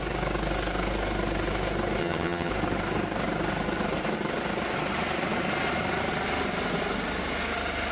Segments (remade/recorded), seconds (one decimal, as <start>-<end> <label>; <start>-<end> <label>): 0.0-2.0 recorded; 2.0-2.5 remade; 2.5-7.9 recorded